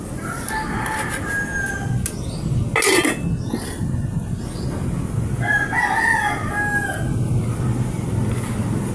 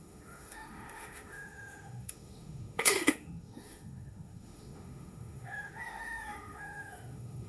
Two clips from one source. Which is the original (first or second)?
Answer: first